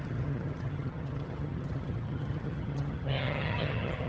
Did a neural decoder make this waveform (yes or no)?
yes